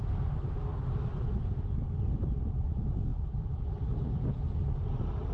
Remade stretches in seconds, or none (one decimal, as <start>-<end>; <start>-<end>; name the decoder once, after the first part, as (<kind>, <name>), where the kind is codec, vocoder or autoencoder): 3.1-4.1 (vocoder, BigVGAN v2)